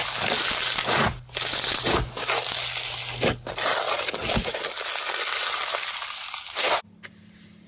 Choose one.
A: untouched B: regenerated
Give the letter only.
A